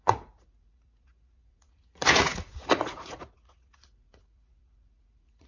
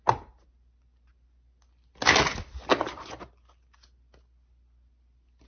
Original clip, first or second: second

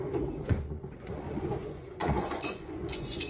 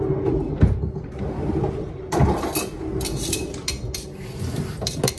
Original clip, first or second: second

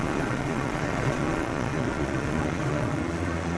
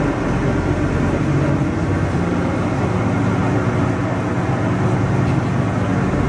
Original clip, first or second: second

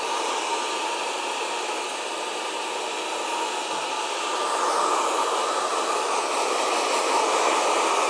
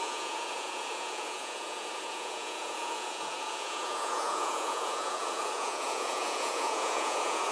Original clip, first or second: first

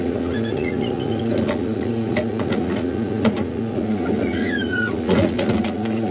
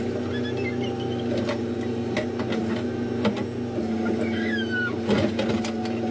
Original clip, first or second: second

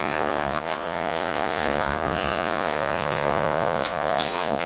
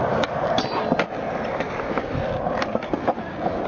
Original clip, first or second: second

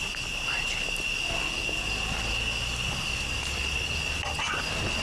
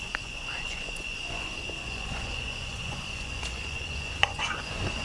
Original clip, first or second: first